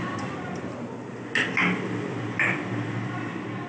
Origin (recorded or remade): recorded